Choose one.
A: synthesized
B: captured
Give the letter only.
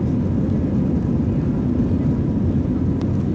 B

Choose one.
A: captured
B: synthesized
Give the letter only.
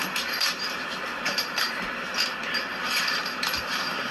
B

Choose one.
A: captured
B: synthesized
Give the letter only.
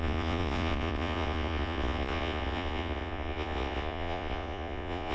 B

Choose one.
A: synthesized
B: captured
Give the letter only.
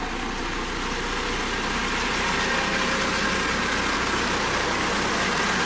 B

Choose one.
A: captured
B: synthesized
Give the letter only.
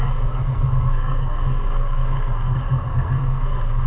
B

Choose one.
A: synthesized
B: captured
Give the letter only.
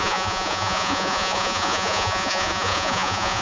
A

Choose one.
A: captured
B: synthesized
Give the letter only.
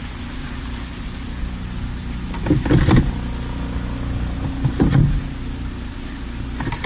A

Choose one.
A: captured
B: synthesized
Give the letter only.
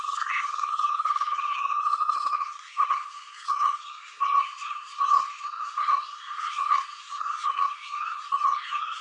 B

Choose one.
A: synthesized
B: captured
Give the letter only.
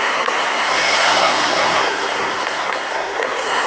A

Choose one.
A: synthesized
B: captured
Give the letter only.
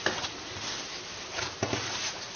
B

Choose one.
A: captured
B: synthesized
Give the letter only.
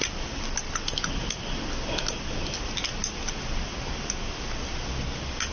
A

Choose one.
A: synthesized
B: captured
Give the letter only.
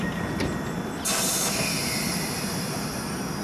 B